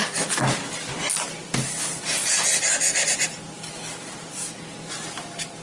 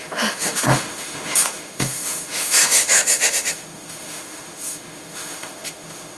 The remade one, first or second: second